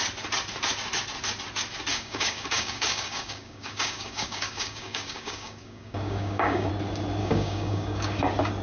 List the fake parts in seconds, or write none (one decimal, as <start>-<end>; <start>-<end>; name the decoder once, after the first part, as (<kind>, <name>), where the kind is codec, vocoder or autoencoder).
1.9-6.7 (codec, DAC); 7.2-8.2